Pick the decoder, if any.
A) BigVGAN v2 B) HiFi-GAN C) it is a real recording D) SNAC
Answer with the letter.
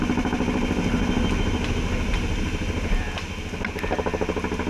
C